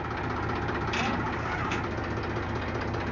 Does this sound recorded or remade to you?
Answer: recorded